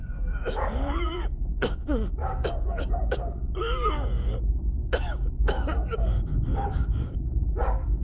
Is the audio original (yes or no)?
no